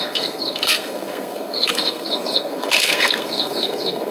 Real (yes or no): no